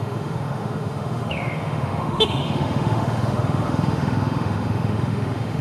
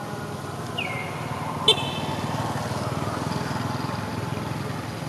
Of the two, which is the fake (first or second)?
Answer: first